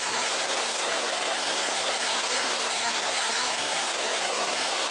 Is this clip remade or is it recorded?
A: remade